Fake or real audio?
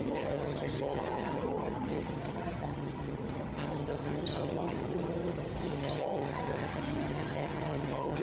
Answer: fake